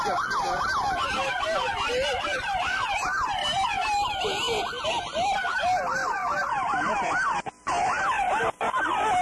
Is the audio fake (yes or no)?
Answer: no